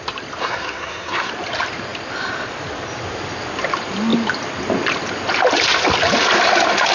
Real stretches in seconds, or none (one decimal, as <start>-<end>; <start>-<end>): 0.0-0.4; 1.3-6.9